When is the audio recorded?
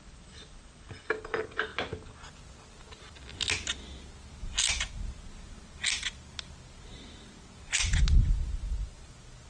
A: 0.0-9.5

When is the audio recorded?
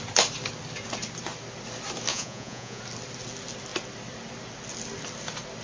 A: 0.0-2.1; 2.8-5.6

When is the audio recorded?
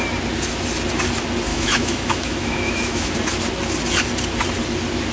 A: 0.0-1.5; 3.1-5.1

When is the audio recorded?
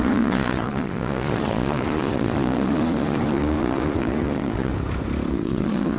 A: 4.7-5.3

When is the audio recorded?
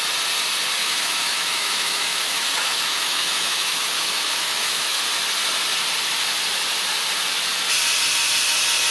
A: 0.0-0.8; 5.0-8.9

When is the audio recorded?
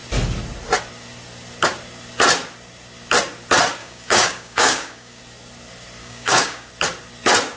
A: 0.0-3.8; 5.2-6.0; 6.7-7.6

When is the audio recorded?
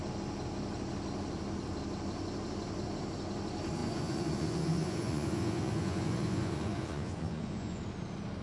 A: 0.0-3.8; 7.8-8.4